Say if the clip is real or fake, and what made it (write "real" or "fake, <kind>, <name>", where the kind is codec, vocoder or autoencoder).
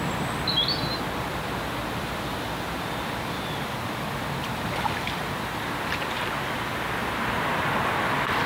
real